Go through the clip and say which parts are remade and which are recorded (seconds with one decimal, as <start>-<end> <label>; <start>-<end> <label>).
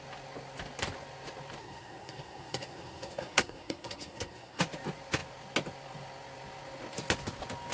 0.0-1.6 recorded; 1.6-4.6 remade; 4.6-7.7 recorded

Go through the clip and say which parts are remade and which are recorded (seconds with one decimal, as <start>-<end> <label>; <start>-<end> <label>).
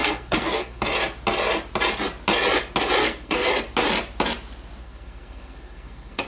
0.0-0.8 remade; 0.8-3.0 recorded; 3.0-3.5 remade; 3.5-4.8 recorded; 4.8-6.3 remade